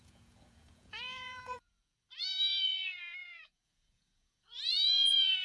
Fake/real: fake